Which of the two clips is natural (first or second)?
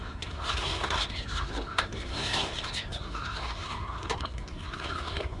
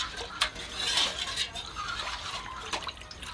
second